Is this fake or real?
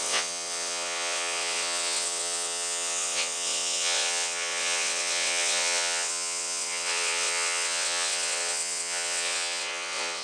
fake